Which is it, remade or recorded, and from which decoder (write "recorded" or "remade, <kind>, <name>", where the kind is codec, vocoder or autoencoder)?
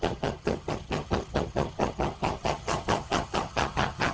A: remade, vocoder, HiFi-GAN